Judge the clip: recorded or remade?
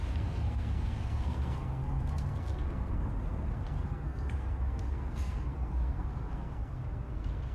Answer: remade